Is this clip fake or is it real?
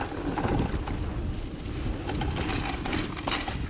real